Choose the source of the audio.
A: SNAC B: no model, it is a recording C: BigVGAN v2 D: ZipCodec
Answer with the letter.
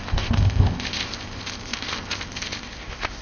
D